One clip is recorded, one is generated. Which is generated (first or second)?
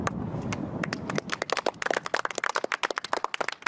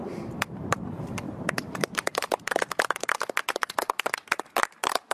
second